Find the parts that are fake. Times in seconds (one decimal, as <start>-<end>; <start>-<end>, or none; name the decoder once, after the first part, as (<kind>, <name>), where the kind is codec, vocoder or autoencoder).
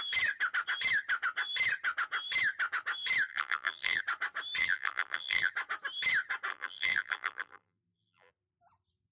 3.3-4.0 (vocoder, BigVGAN v2); 4.6-5.5; 6.5-8.3